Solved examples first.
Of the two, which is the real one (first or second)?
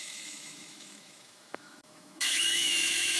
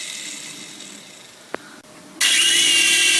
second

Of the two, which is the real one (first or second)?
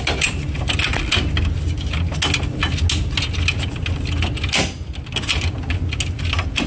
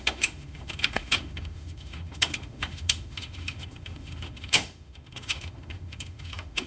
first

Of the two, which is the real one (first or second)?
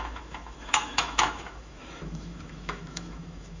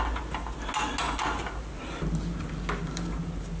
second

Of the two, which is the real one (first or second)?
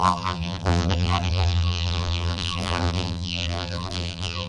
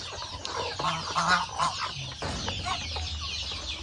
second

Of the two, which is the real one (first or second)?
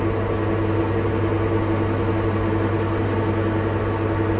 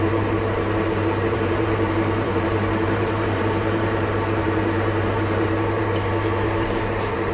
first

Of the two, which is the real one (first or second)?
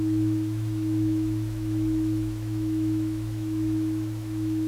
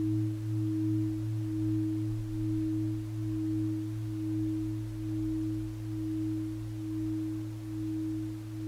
second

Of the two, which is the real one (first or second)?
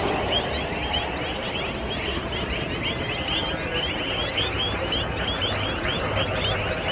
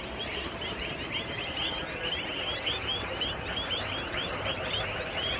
first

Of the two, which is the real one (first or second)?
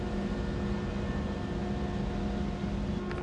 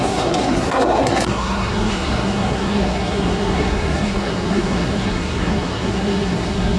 first